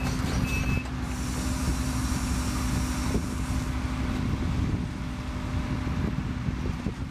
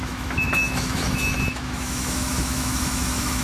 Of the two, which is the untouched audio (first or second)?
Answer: first